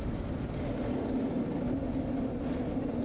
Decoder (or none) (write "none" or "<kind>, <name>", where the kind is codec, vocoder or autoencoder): none